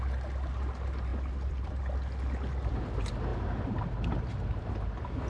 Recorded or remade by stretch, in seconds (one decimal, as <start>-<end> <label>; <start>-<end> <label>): 0.0-1.1 recorded; 1.1-1.8 remade; 1.8-3.3 recorded; 3.3-4.7 remade; 4.7-5.3 recorded